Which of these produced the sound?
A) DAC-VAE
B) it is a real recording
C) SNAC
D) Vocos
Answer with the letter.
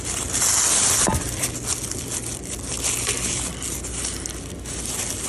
B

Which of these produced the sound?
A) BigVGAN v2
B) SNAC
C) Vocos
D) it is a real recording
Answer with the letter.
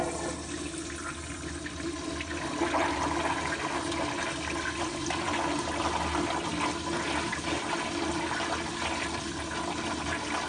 D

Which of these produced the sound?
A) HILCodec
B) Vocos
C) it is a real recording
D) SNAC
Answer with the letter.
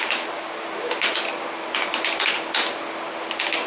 C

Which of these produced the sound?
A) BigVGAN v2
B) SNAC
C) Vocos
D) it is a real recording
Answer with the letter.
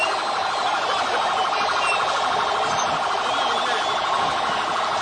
D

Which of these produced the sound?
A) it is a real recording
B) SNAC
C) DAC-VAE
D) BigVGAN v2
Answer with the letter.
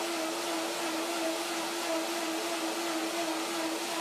A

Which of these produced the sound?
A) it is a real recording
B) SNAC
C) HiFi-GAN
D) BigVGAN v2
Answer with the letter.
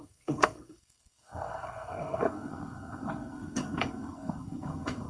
B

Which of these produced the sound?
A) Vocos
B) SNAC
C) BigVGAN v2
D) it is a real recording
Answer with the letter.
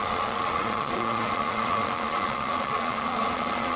A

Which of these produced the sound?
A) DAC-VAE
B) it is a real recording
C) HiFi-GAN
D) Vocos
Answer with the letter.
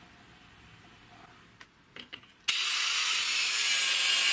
B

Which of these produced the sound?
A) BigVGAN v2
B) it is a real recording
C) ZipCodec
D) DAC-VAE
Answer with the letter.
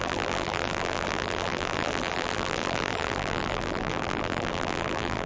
A